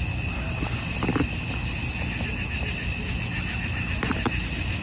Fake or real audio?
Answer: real